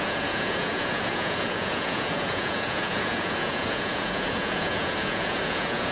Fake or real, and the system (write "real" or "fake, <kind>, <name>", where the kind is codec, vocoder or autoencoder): fake, vocoder, Vocos